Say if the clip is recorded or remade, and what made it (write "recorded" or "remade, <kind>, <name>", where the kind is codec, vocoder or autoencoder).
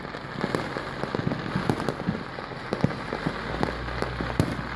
recorded